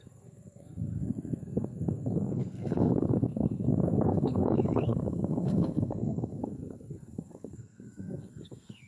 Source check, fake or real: fake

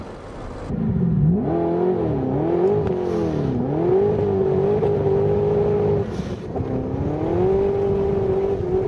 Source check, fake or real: real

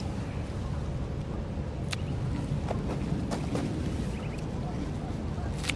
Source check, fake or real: real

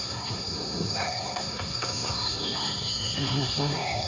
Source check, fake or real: fake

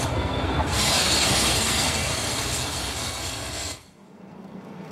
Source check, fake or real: fake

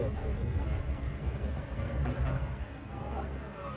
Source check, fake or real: fake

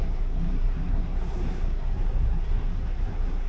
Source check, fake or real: fake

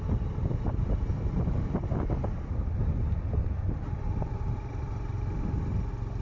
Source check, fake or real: real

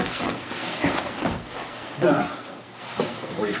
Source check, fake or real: fake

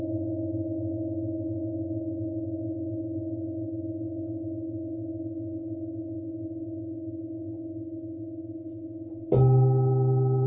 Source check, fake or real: real